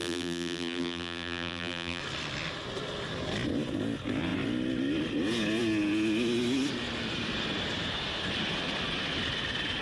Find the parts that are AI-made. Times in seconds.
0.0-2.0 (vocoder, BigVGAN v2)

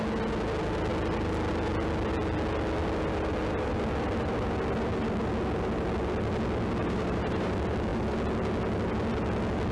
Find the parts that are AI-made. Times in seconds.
6.8-7.5 (vocoder, BigVGAN v2)

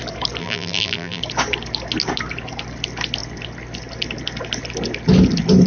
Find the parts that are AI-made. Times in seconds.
0.4-1.2 (vocoder, BigVGAN v2)

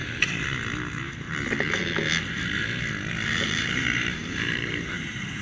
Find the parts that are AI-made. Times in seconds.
0.9-1.8 (vocoder, BigVGAN v2); 3.1-5.4

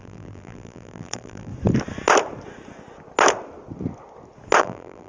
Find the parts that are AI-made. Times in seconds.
0.0-1.5 (vocoder, BigVGAN v2); 4.6-5.1

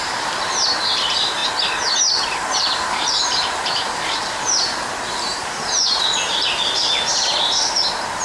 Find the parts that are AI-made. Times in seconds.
0.0-1.4 (vocoder, BigVGAN v2); 2.6-8.2

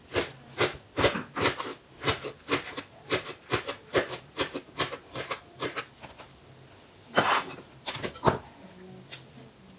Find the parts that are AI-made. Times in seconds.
1.7-5.8 (vocoder, BigVGAN v2)